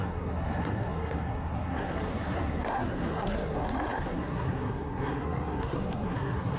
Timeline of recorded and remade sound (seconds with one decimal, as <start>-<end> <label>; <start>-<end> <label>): 0.0-6.6 remade

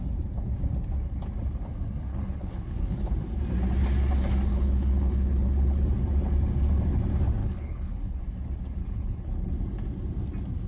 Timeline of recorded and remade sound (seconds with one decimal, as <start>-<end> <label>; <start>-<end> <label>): 0.0-2.1 recorded; 2.1-3.0 remade; 3.0-4.5 recorded; 4.5-5.8 remade; 5.8-7.4 recorded; 7.4-8.2 remade; 8.2-8.8 recorded; 8.8-9.5 remade; 9.5-10.7 recorded